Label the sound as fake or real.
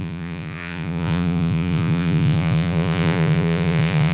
fake